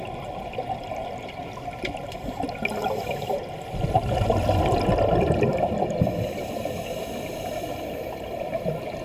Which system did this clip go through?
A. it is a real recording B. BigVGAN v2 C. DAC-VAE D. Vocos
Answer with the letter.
B